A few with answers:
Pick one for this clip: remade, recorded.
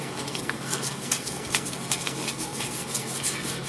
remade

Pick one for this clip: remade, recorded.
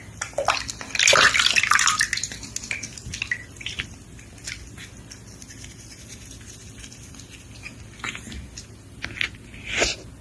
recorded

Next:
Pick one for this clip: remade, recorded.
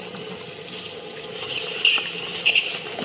recorded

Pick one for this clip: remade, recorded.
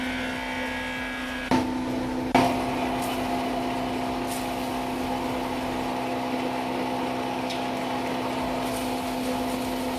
recorded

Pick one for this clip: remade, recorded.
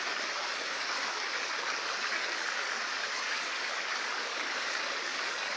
remade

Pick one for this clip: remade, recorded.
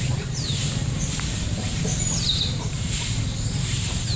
remade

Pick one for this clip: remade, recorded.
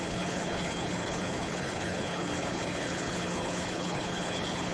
remade